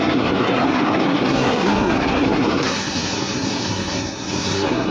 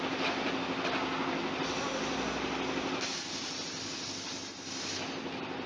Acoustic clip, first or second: second